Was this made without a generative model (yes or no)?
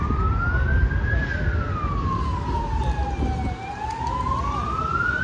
yes